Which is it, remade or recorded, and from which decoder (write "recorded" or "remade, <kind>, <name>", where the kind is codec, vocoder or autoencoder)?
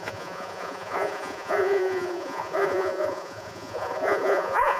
remade, vocoder, Vocos